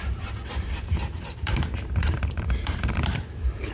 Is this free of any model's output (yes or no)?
no